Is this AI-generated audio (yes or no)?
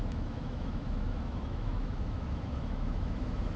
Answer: yes